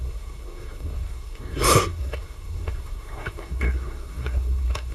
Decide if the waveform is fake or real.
fake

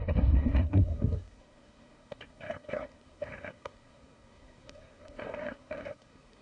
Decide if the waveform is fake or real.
fake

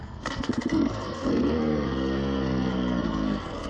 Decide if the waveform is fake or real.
fake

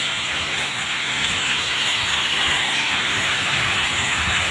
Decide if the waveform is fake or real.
fake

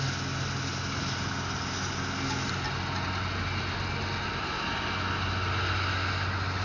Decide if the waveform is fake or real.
real